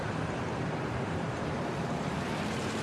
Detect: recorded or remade remade